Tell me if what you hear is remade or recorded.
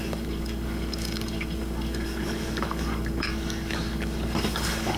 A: remade